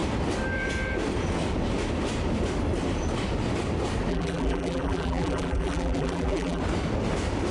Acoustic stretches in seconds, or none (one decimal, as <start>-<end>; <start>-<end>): 0.0-4.1; 6.6-7.5